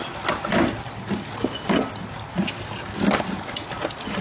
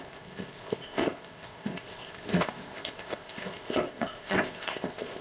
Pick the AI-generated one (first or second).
second